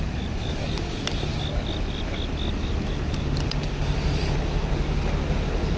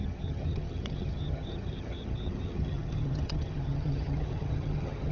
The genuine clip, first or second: first